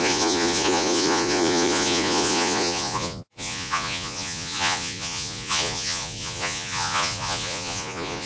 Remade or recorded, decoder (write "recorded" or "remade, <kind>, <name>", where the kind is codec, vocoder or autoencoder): remade, vocoder, Vocos